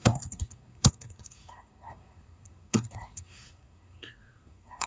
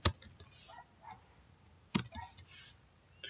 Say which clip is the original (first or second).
second